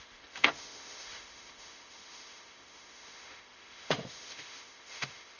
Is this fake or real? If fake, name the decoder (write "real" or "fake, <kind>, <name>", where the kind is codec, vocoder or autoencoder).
fake, autoencoder, DAC-VAE